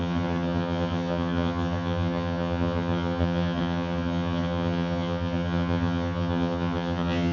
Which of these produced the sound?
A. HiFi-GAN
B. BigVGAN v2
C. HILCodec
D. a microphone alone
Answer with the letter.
A